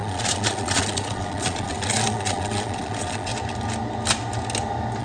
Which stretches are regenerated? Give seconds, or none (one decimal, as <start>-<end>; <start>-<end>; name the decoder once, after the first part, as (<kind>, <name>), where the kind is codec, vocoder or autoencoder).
0.0-3.3 (vocoder, Vocos)